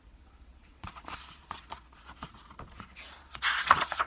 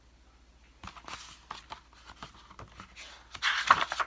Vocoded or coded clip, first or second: first